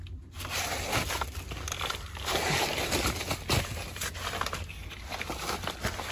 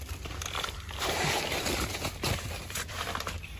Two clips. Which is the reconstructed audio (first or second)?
second